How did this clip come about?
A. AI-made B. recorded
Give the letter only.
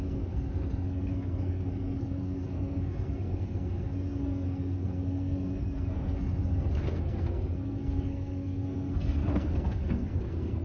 A